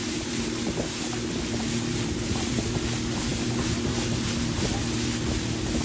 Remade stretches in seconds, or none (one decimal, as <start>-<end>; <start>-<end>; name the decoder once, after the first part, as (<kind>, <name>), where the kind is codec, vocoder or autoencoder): 0.0-1.0 (vocoder, BigVGAN v2); 1.9-2.7; 3.3-4.7